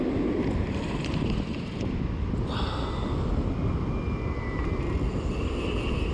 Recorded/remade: recorded